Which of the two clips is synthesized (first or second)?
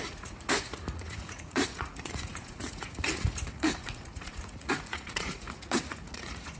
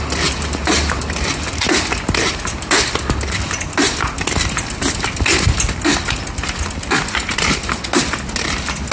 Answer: first